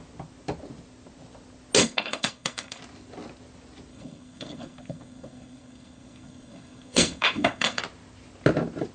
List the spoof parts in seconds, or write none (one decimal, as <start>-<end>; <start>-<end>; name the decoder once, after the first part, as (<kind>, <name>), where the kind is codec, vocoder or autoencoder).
1.8-2.8 (codec, SNAC); 3.9-7.8